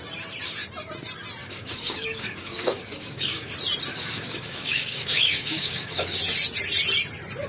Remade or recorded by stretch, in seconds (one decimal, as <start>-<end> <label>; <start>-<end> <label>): 0.0-1.4 recorded; 1.4-3.5 remade; 3.5-3.9 recorded; 3.9-6.2 remade; 6.2-7.5 recorded